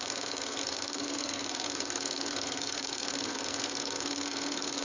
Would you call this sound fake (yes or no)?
yes